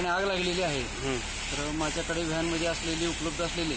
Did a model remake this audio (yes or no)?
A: no